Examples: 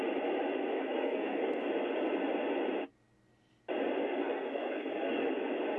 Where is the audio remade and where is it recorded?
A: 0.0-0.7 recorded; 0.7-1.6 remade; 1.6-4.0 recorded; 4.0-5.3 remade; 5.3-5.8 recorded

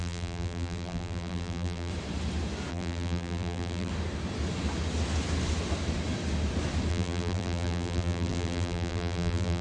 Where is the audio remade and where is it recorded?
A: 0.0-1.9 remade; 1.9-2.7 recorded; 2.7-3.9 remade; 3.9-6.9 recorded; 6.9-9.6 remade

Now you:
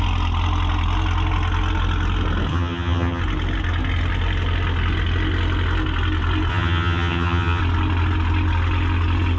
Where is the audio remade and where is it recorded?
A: 0.0-2.5 recorded; 2.5-3.2 remade; 3.2-6.5 recorded; 6.5-7.6 remade; 7.6-9.4 recorded